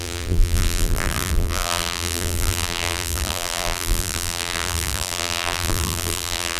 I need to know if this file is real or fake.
fake